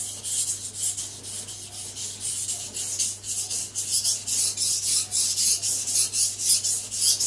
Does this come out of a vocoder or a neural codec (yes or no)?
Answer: no